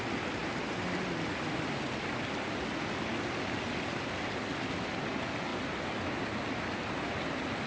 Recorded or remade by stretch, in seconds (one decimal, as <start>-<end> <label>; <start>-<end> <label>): 0.0-7.7 recorded